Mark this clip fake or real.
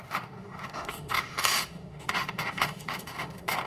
fake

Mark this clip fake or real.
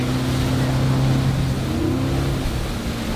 real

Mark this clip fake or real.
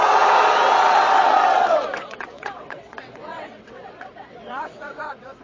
fake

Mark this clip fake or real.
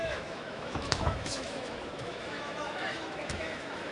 fake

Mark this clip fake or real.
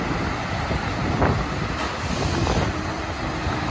real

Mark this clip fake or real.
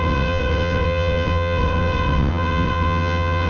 fake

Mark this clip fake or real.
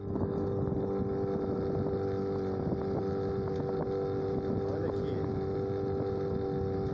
real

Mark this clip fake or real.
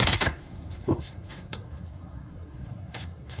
fake